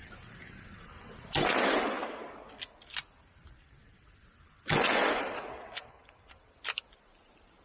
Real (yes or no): yes